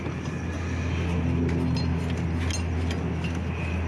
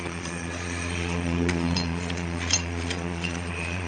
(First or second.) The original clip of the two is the first